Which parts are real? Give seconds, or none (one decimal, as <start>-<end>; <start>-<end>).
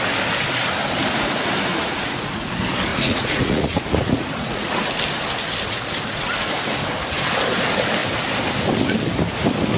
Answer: 0.0-1.7; 2.5-2.9; 4.8-9.8